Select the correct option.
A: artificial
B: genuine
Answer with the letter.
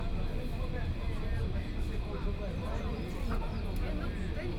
B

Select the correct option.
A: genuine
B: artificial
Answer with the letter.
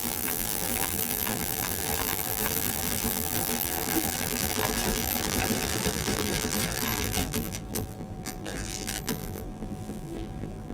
B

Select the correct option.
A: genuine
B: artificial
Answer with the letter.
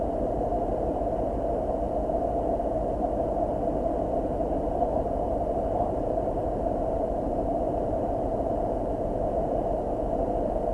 B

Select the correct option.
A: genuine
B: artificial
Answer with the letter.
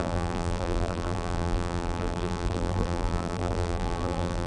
B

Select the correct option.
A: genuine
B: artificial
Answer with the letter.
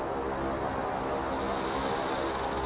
A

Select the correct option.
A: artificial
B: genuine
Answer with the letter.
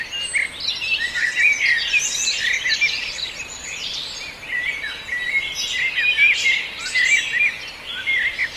B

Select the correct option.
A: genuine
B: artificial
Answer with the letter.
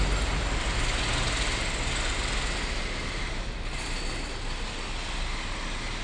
A